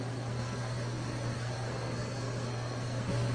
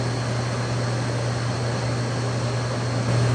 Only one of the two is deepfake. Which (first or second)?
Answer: first